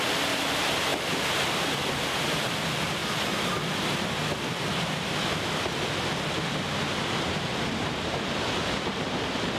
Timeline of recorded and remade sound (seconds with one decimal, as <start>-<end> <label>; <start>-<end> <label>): 0.0-9.6 recorded